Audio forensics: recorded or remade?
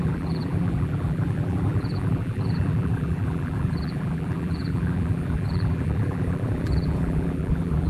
remade